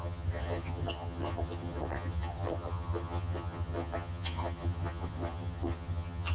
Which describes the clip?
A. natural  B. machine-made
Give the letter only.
B